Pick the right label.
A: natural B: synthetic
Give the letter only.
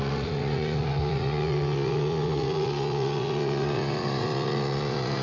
B